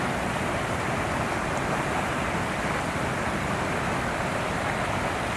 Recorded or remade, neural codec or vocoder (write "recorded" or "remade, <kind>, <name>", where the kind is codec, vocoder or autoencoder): recorded